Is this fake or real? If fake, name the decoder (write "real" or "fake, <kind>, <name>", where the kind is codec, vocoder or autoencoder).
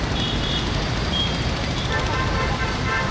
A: fake, vocoder, BigVGAN v2